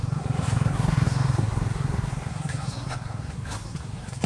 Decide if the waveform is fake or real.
fake